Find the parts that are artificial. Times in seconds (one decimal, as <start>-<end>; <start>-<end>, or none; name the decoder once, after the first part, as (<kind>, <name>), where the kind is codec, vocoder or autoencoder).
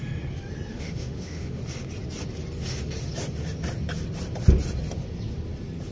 0.7-1.6 (autoencoder, DAC-VAE)